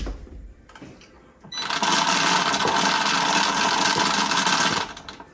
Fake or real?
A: real